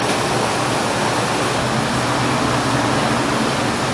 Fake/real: real